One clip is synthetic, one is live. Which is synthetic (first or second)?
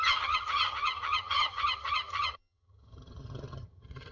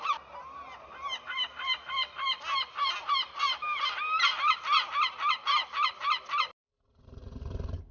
first